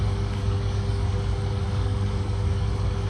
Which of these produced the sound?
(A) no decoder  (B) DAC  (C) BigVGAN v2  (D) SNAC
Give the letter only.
B